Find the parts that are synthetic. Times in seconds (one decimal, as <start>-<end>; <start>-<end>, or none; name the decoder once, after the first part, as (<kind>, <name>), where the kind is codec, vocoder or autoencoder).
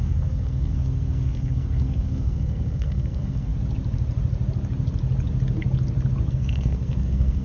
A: 0.0-3.5 (codec, SNAC); 6.3-7.4